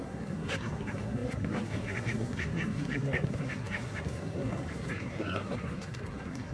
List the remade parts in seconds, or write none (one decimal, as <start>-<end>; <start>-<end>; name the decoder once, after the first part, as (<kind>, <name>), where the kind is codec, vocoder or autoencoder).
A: 0.0-6.5 (codec, SNAC)

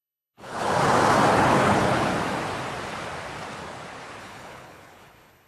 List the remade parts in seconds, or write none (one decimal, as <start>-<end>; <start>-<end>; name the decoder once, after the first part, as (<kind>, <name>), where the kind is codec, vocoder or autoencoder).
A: 0.0-0.8 (codec, HILCodec); 1.4-2.1; 4.2-5.5

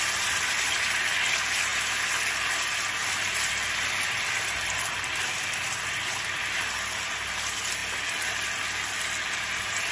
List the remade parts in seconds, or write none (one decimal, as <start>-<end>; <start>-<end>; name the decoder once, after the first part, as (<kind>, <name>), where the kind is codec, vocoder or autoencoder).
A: 3.0-5.1 (vocoder, BigVGAN v2)

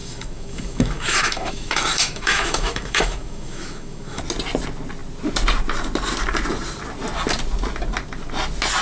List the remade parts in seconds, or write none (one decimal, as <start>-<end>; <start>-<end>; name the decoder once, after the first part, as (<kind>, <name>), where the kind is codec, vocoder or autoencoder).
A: 0.0-4.2 (autoencoder, DAC-VAE)

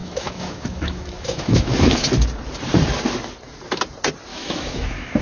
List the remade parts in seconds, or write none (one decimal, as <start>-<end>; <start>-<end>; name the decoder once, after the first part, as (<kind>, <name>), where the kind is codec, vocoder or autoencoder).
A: 0.0-2.1 (autoencoder, DAC-VAE); 4.3-5.2